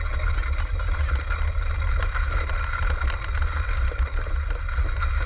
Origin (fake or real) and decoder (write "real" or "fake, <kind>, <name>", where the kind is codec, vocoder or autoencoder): real